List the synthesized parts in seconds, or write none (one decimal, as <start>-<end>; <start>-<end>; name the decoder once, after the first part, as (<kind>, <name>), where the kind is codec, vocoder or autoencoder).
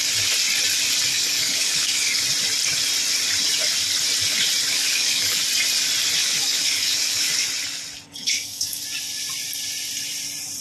1.1-2.2 (codec, DAC); 4.7-5.4; 6.2-7.3; 8.2-8.8